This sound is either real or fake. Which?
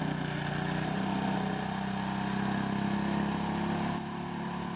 real